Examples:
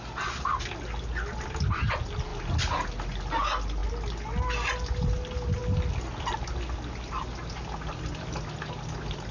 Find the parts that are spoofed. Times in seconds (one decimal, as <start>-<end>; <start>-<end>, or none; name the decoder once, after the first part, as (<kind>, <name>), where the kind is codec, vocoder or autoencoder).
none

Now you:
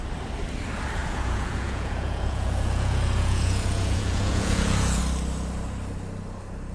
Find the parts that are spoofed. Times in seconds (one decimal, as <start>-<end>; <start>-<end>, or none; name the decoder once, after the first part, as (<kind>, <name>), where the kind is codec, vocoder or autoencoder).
1.0-5.0 (vocoder, Vocos)

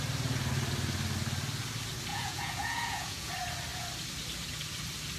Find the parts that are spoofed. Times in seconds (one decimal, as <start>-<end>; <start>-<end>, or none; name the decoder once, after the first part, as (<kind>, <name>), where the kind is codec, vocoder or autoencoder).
2.1-3.3 (vocoder, Vocos)

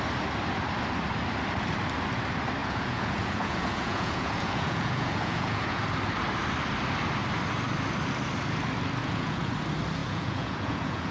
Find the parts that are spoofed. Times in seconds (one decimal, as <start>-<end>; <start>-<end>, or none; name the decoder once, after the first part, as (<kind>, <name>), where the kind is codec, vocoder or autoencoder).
2.6-5.8 (vocoder, Vocos); 9.0-9.5; 10.0-11.1